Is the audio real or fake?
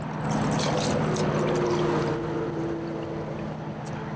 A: real